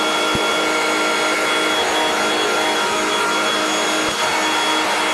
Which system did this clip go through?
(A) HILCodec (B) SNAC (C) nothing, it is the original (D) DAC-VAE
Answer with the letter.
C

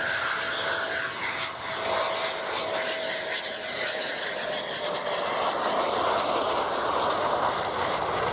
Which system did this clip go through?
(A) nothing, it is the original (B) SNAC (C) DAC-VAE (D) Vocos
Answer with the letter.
A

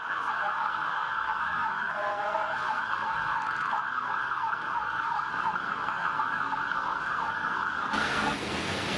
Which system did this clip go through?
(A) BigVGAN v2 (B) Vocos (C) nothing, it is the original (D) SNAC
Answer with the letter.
D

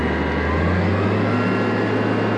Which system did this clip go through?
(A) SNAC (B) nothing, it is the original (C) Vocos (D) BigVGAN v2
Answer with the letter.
B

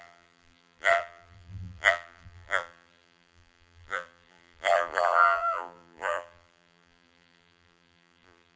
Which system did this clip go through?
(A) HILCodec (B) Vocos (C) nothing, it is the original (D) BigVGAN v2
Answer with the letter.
D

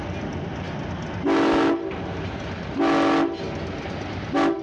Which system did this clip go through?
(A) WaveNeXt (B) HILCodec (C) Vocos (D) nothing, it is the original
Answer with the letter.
D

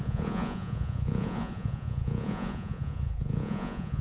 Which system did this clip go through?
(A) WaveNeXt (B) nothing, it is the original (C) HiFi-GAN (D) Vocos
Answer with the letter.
D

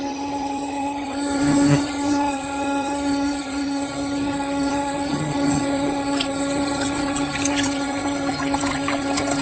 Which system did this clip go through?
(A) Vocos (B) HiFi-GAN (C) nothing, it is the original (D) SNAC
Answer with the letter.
B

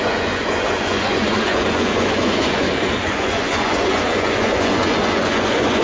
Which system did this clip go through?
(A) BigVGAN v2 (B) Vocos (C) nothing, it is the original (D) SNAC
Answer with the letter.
B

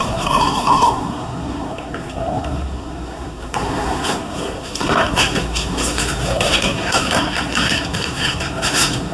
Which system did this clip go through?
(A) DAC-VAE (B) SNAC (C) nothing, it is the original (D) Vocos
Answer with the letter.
B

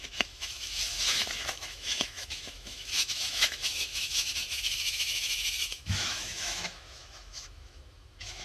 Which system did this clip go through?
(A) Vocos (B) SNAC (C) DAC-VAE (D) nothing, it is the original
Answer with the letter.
C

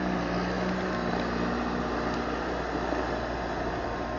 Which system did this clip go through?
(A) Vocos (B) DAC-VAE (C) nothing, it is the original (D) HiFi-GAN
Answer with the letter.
C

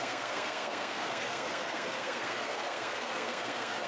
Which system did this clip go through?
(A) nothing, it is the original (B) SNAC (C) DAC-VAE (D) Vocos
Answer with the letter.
B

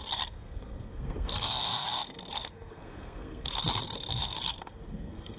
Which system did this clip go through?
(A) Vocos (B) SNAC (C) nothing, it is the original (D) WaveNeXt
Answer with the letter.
B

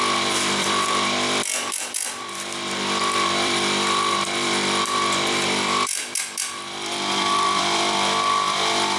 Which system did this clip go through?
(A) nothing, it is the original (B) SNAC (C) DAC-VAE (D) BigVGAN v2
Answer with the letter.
D